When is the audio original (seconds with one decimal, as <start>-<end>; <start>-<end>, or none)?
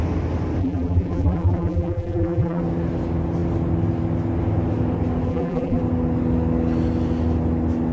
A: 0.0-0.6; 2.6-5.3; 5.8-7.9